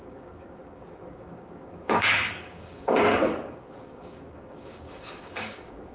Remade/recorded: remade